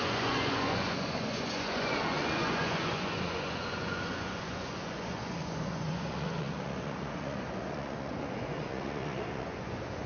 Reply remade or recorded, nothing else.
remade